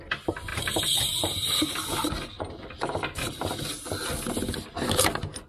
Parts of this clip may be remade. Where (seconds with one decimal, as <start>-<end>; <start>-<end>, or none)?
0.5-1.7

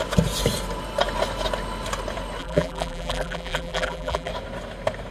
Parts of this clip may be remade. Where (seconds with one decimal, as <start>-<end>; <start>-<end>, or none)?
2.4-4.3

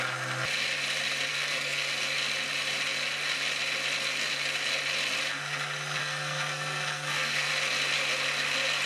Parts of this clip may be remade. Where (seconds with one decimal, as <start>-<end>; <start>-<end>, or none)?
1.3-1.9; 6.0-7.5